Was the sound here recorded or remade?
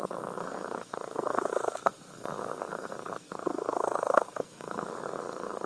remade